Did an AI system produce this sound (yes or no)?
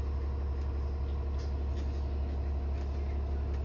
no